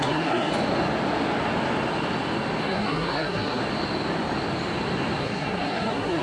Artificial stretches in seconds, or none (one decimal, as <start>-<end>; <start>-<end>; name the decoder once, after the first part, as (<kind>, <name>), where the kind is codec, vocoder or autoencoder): 0.0-0.5 (codec, SNAC); 2.6-3.6; 5.2-6.2